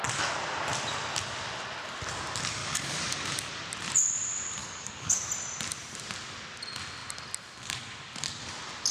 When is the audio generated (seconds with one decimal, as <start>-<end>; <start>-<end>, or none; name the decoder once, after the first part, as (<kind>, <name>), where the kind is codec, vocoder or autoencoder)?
2.6-3.5 (codec, DAC); 4.6-5.3

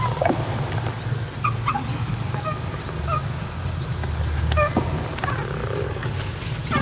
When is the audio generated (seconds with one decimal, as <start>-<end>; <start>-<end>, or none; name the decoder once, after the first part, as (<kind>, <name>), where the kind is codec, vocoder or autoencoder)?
1.9-2.8 (codec, DAC); 5.6-6.3

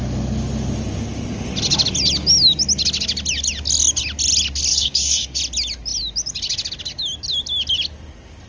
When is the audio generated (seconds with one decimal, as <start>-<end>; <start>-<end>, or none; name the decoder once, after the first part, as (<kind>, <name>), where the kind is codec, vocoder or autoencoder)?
4.7-5.4 (codec, DAC)

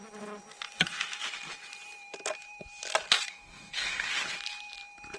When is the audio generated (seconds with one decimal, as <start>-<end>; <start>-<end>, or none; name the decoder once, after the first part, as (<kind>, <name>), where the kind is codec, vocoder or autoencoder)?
3.3-4.1 (codec, DAC)

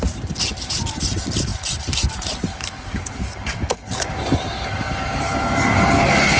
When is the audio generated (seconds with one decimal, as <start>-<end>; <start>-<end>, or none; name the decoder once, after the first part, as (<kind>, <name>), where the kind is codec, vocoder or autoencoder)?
2.5-6.4 (codec, DAC)

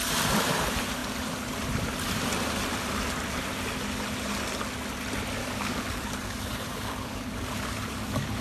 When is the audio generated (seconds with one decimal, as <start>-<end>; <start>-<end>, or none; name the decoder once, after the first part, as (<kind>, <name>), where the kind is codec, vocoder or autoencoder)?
5.4-8.4 (codec, DAC)

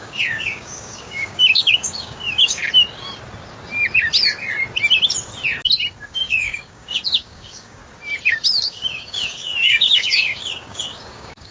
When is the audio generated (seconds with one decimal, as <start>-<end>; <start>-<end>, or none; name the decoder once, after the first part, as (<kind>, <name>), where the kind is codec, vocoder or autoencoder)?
0.0-2.6 (codec, DAC); 6.1-7.8; 8.7-11.5

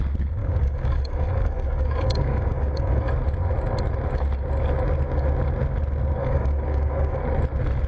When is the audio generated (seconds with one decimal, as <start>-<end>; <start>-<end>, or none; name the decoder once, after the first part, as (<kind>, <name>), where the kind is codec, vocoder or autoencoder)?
0.4-3.1 (codec, DAC); 6.2-7.2